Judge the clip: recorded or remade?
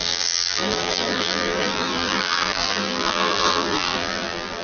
remade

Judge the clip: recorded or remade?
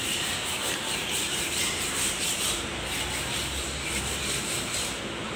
remade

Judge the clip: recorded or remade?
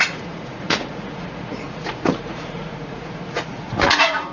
remade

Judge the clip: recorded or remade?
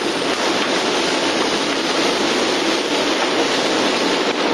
recorded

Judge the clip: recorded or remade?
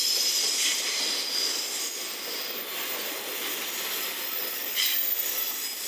recorded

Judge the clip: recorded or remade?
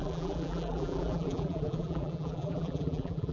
remade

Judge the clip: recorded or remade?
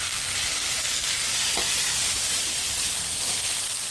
recorded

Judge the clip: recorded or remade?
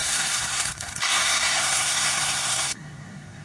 remade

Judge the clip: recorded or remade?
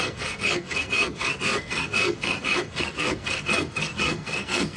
remade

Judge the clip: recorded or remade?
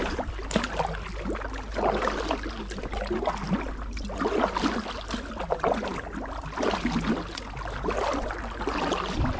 recorded